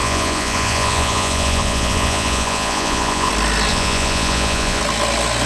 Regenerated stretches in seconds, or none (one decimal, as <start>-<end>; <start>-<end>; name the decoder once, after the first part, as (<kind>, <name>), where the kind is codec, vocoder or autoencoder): 0.0-3.3 (vocoder, Vocos); 3.7-4.8